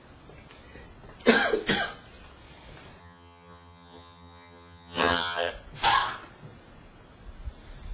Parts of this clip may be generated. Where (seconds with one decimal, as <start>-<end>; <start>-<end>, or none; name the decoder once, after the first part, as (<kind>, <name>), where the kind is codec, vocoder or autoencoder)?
3.0-5.5 (vocoder, HiFi-GAN)